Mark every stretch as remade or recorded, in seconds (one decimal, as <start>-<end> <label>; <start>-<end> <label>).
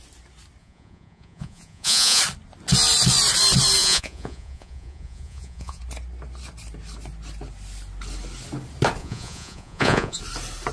0.0-0.6 recorded; 0.6-2.2 remade; 2.2-3.8 recorded; 3.8-5.8 remade; 5.8-9.0 recorded; 9.0-10.2 remade; 10.2-10.7 recorded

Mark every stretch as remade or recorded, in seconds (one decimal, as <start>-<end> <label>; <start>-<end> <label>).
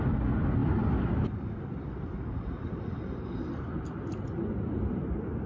0.0-5.5 recorded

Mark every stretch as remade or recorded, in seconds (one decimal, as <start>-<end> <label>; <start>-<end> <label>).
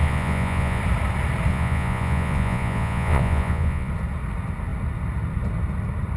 0.0-0.8 remade; 0.8-1.5 recorded; 1.5-3.9 remade; 3.9-6.2 recorded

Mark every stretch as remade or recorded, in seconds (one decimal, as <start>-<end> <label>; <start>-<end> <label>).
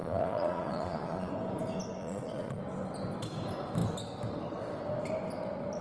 0.0-1.3 remade; 1.3-2.0 recorded; 2.0-2.6 remade; 2.6-5.8 recorded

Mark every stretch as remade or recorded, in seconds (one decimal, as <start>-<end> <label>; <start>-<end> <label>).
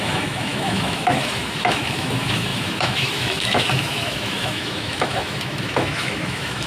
0.0-6.7 remade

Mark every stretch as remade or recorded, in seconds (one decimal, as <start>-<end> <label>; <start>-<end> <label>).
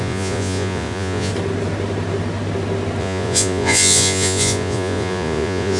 0.0-1.3 remade; 1.3-3.0 recorded; 3.0-5.8 remade